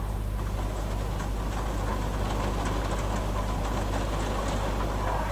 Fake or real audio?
real